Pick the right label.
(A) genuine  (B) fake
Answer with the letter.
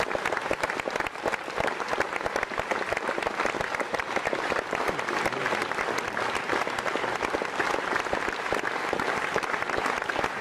A